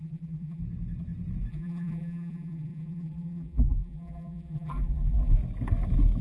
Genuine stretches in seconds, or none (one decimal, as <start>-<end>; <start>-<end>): 0.6-1.5; 5.4-6.2

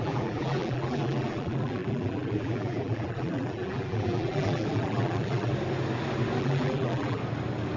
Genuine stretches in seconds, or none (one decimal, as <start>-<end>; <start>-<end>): 5.5-6.4; 7.2-7.8

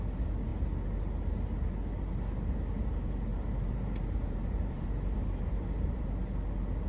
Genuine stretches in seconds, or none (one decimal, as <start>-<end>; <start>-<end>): 0.0-3.3; 6.0-6.9

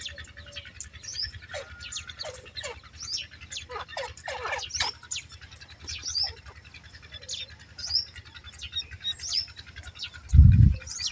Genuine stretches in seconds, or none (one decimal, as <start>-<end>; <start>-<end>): 0.0-1.1; 1.6-11.1

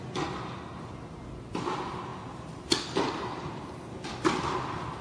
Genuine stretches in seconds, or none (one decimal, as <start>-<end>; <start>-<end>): 0.0-5.0

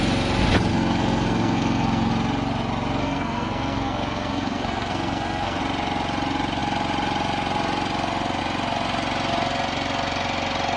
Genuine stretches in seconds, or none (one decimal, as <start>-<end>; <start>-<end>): 0.0-0.7; 2.1-3.0; 5.6-10.8